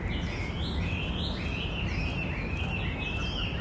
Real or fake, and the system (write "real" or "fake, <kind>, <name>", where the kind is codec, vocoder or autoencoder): real